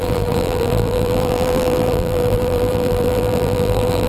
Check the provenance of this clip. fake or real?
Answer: fake